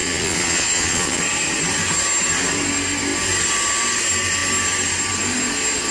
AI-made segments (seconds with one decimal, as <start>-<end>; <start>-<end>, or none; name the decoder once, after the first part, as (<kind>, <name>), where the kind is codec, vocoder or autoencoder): 0.0-1.2 (vocoder, Vocos)